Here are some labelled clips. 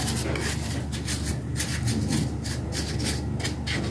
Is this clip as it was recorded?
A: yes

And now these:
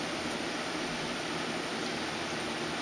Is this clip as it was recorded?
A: no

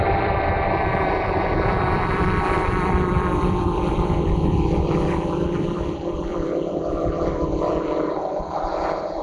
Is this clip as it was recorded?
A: no